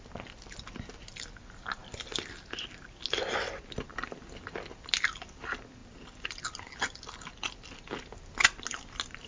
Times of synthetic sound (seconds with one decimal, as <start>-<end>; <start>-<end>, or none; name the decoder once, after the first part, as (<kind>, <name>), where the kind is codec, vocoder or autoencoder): none